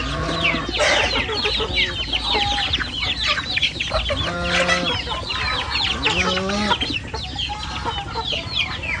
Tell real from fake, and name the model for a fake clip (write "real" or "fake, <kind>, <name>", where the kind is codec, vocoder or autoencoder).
real